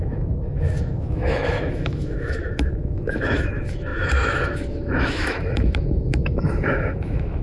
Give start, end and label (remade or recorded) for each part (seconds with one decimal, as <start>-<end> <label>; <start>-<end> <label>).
0.0-7.4 remade